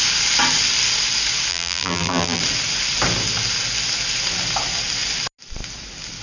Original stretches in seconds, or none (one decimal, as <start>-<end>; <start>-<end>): 0.0-1.5; 2.4-6.2